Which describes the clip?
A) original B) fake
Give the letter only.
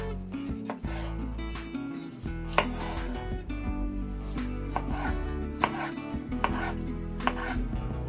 A